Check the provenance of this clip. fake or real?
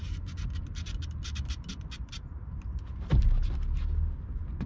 real